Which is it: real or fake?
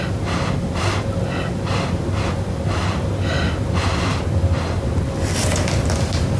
real